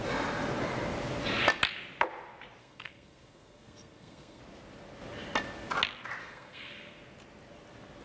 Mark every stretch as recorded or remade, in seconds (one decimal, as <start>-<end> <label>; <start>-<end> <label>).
0.0-2.6 recorded; 2.6-4.4 remade; 4.4-6.2 recorded; 6.2-7.0 remade; 7.0-8.0 recorded